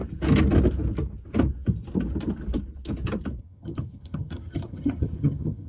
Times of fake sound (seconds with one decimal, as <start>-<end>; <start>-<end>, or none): 3.4-5.7